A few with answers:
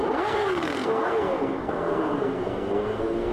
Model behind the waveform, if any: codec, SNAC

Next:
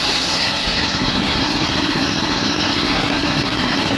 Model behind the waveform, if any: codec, SNAC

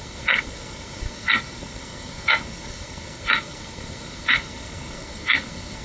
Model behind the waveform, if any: codec, SNAC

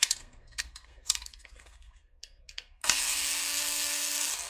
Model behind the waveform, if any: codec, SNAC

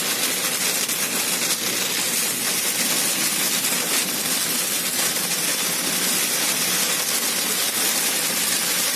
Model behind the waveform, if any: none